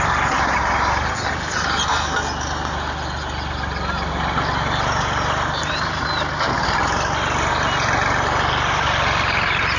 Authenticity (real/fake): real